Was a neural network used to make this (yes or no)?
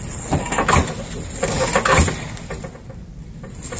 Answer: no